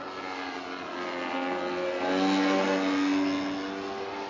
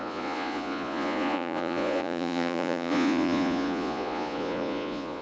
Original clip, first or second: first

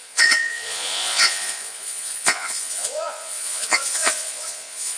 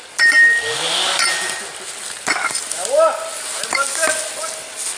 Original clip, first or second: second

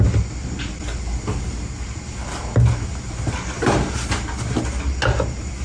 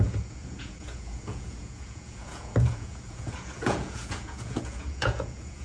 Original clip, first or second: first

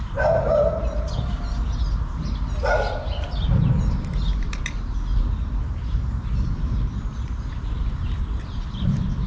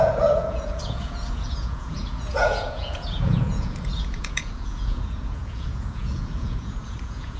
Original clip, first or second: first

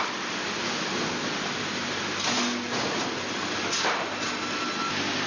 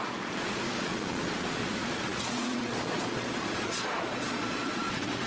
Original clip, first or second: first